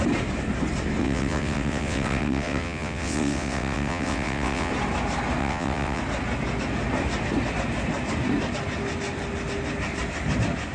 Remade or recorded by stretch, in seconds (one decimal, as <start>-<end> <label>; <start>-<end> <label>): 0.0-1.0 recorded; 1.0-4.7 remade; 4.7-5.4 recorded; 5.4-6.0 remade; 6.0-10.7 recorded